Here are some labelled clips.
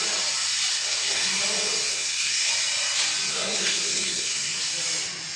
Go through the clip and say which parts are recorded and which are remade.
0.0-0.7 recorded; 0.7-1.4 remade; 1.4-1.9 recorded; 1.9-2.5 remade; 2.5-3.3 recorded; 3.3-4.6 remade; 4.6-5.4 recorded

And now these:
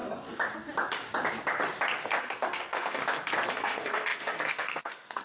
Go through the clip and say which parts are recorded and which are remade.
0.0-2.2 recorded; 2.2-3.0 remade; 3.0-3.5 recorded; 3.5-5.2 remade

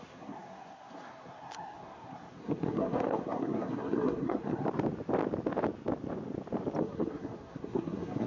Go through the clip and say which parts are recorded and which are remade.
0.0-4.6 remade; 4.6-6.8 recorded; 6.8-8.3 remade

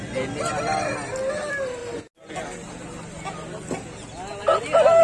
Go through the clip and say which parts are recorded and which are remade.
0.0-5.0 recorded

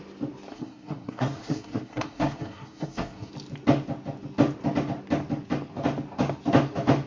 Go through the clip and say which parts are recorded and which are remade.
0.0-0.5 recorded; 0.5-3.3 remade; 3.3-7.1 recorded

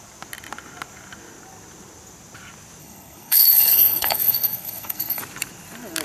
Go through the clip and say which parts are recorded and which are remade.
0.0-2.8 recorded; 2.8-5.2 remade; 5.2-6.0 recorded